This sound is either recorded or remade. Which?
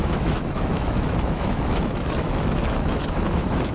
remade